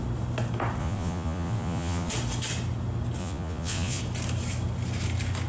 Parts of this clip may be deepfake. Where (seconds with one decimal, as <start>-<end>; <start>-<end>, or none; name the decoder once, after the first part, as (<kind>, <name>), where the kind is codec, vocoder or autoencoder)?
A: 0.8-2.1 (vocoder, Vocos); 3.2-4.0